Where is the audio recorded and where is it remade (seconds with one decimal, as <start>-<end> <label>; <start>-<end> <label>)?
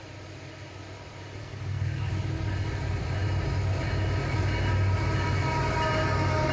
0.0-1.4 recorded; 1.4-2.1 remade; 2.1-6.5 recorded